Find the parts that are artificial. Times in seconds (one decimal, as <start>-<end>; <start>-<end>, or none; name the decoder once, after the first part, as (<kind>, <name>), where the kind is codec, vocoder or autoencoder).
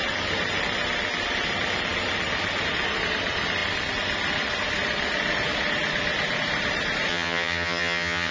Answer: 7.1-8.3 (vocoder, HiFi-GAN)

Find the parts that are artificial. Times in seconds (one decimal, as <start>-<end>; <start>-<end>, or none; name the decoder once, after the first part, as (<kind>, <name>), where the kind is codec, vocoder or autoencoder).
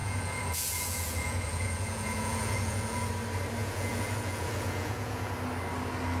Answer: 0.0-3.1 (vocoder, Vocos); 3.6-5.3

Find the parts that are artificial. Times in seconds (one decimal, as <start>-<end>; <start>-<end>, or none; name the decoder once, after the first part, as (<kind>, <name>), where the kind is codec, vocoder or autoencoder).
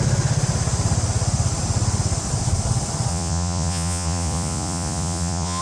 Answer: 3.1-5.6 (vocoder, Vocos)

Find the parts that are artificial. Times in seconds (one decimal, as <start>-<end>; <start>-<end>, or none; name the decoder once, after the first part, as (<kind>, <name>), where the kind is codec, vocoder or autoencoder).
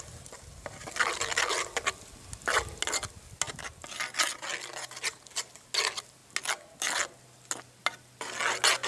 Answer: none